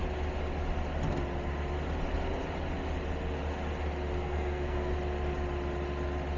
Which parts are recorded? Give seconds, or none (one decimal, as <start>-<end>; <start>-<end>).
0.0-4.2; 4.9-6.4